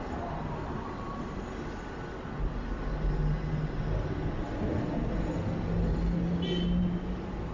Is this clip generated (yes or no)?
no